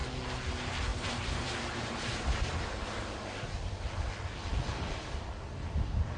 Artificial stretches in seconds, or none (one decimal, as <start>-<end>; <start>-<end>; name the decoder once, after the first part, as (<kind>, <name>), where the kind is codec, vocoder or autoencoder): 0.9-2.5 (vocoder, BigVGAN v2)